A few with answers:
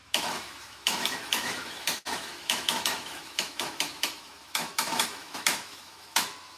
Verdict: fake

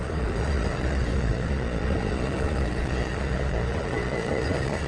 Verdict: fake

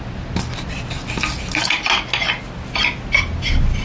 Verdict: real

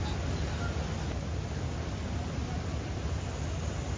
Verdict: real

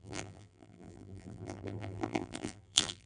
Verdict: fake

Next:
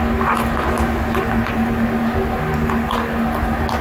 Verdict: real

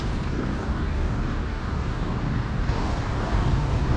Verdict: fake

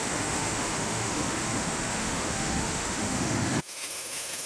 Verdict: fake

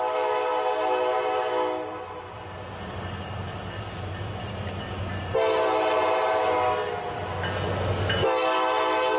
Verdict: real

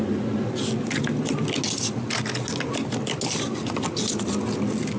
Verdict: real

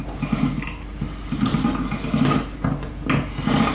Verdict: real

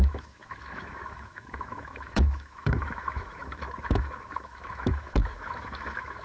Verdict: fake